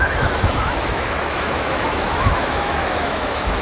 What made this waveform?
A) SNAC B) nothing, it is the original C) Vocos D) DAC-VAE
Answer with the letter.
D